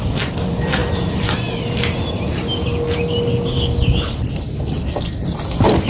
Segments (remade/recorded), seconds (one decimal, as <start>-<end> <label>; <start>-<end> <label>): 0.0-5.9 recorded